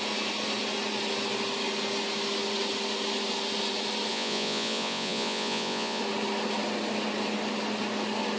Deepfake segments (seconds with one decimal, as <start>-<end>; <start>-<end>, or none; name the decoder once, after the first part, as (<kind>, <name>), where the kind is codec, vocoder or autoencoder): 4.1-6.0 (vocoder, Vocos)